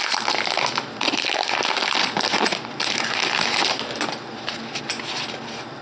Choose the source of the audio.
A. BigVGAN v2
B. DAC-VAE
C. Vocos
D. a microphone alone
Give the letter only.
D